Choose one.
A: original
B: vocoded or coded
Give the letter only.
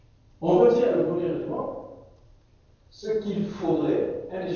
A